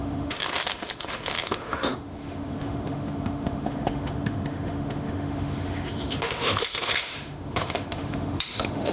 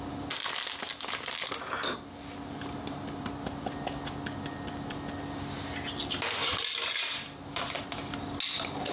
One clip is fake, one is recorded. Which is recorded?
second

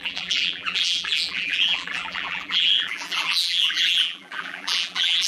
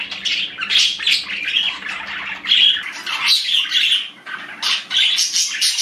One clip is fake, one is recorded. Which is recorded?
second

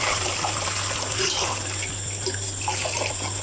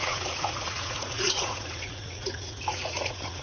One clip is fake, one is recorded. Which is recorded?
first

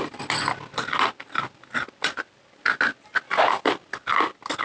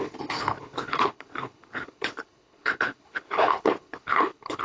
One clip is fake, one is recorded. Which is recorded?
first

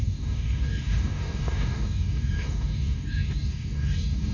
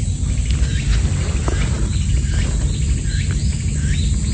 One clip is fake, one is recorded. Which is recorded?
second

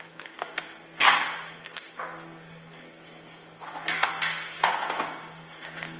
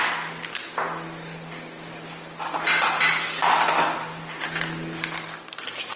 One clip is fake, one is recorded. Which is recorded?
second